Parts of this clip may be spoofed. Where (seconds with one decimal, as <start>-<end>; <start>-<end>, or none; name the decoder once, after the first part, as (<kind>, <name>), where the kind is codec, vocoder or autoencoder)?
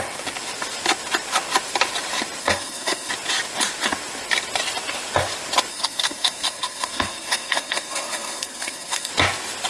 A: 2.4-3.1 (codec, SNAC); 5.7-9.1